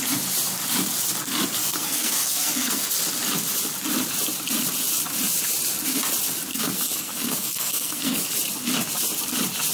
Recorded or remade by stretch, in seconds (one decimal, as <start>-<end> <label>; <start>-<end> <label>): 0.0-1.6 recorded; 1.6-2.9 remade; 2.9-6.5 recorded; 6.5-8.3 remade; 8.3-9.7 recorded